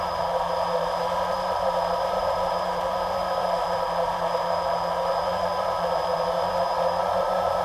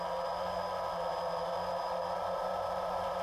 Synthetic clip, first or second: first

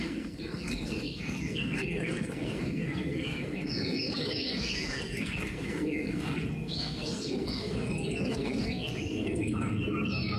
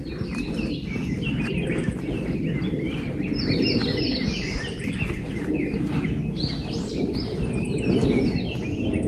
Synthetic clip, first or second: first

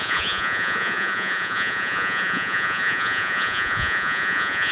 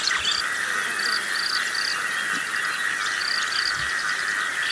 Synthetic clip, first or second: first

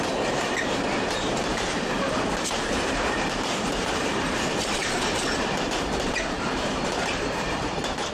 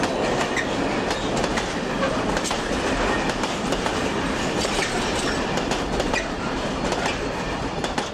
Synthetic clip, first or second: first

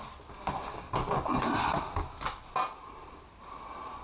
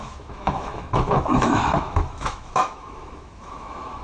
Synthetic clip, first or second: second